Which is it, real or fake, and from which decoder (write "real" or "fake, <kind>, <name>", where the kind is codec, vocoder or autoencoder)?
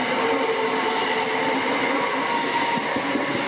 real